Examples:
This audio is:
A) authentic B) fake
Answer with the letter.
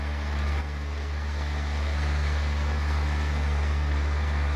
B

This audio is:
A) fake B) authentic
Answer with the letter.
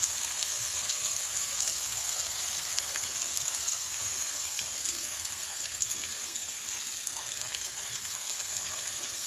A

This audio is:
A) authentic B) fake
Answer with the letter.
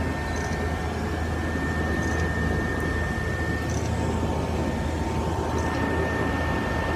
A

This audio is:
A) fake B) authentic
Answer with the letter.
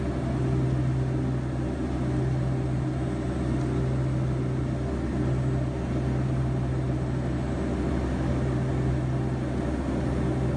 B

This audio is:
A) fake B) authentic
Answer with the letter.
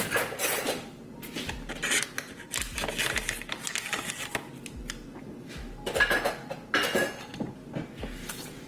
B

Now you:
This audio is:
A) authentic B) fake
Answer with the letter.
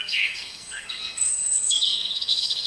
B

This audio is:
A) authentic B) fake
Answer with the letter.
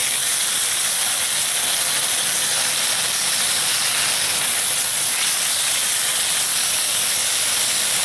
A